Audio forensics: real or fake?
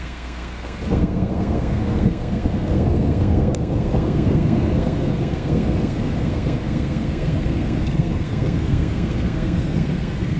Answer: fake